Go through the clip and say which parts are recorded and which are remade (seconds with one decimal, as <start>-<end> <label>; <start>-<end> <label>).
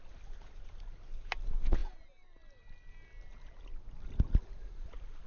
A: 0.0-5.3 recorded